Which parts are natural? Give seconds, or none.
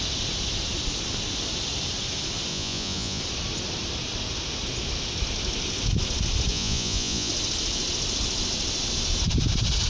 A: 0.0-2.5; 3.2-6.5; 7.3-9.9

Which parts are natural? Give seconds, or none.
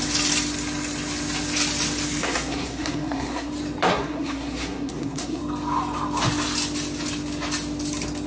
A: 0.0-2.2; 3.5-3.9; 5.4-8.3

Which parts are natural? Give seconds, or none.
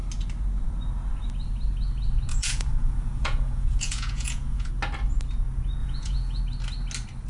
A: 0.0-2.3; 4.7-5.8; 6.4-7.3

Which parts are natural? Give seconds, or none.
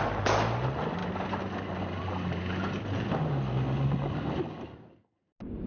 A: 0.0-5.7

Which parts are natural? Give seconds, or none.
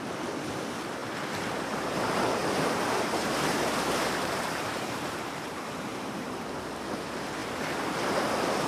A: 0.0-2.4; 6.5-8.7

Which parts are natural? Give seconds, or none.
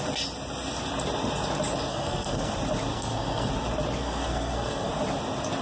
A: 0.0-1.9; 2.5-2.9; 3.5-4.0; 4.9-5.6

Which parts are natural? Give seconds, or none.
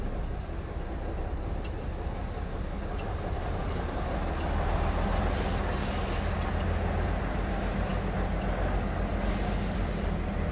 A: 0.0-10.5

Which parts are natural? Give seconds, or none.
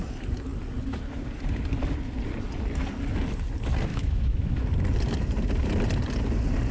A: 0.0-3.9; 4.6-6.7